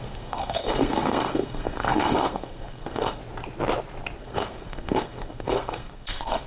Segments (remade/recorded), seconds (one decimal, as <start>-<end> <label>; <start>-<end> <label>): 0.0-3.2 remade; 3.2-4.2 recorded; 4.2-6.5 remade